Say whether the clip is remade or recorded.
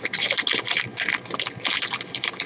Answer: recorded